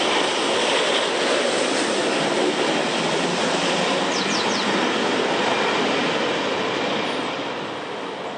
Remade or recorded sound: recorded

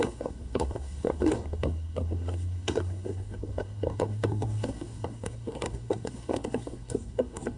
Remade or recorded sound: remade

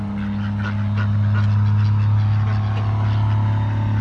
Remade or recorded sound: recorded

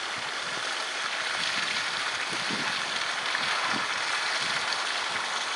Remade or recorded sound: recorded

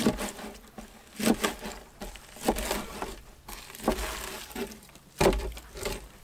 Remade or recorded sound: recorded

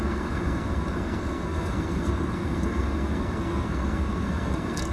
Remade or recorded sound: remade